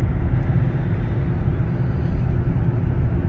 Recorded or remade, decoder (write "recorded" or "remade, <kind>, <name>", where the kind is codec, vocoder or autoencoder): recorded